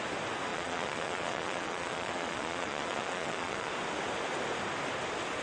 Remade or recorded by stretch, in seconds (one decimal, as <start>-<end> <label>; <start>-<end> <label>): 0.0-0.5 recorded; 0.5-3.7 remade; 3.7-5.4 recorded